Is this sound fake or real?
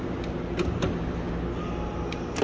real